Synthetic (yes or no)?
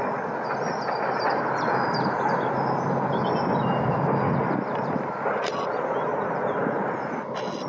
no